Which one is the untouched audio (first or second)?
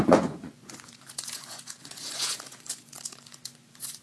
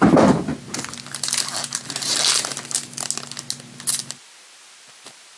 second